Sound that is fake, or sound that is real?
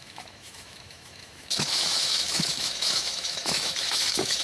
fake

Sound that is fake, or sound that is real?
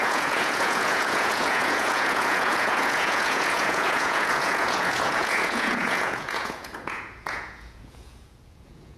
fake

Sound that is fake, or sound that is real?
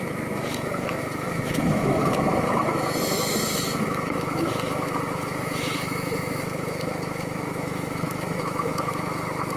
fake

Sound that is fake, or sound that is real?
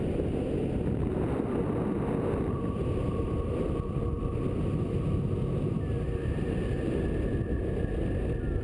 real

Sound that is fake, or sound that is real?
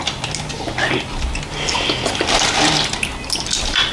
real